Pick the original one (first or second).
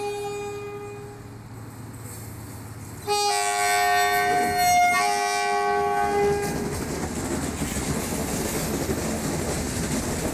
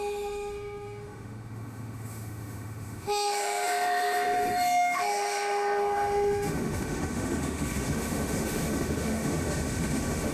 first